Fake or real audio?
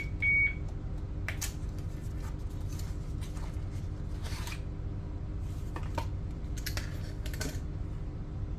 real